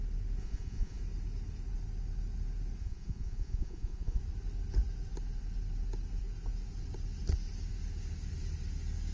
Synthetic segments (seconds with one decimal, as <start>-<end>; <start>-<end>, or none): 0.4-1.0; 2.8-4.2